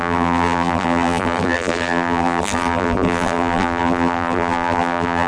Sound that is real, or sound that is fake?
fake